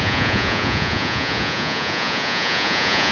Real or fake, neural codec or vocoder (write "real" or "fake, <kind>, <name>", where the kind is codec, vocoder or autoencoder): fake, vocoder, Vocos